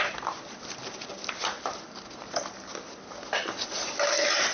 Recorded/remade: recorded